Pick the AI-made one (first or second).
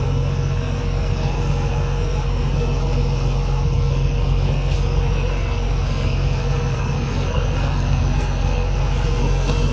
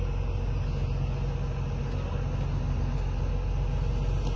first